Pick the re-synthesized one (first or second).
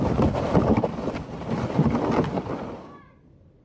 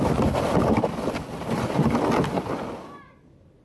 first